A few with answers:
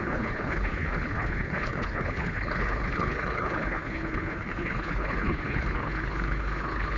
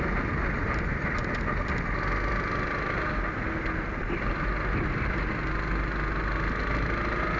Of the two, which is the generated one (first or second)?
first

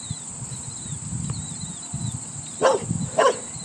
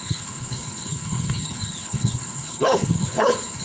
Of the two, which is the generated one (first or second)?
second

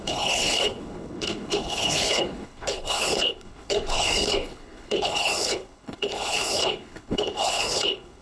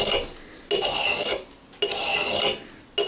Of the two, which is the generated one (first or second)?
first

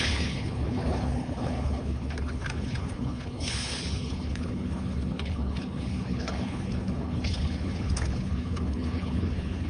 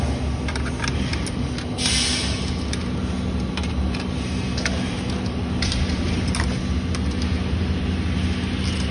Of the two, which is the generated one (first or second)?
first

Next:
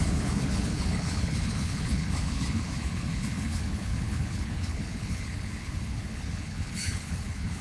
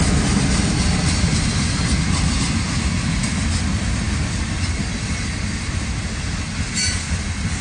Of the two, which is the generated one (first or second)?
first